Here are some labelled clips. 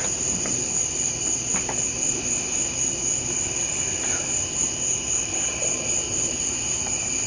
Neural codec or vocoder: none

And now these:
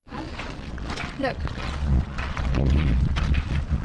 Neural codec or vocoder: vocoder, Vocos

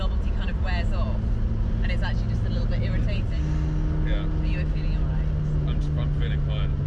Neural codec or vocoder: none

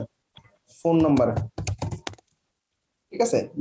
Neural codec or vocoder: none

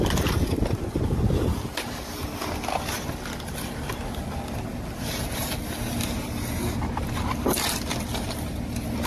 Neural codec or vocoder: none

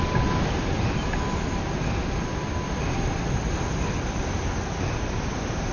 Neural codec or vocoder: none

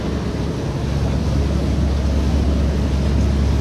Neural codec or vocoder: none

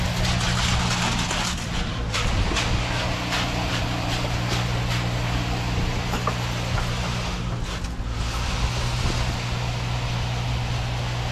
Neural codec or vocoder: none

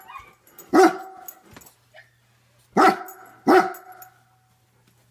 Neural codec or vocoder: none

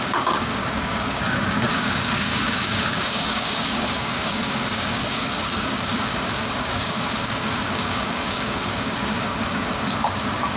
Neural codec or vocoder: codec, DAC